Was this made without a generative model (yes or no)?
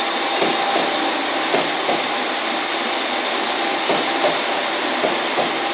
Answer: yes